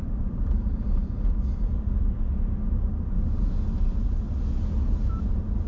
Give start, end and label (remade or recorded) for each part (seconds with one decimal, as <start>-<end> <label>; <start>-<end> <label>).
0.0-5.7 recorded